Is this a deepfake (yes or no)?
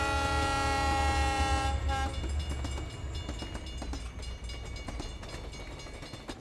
no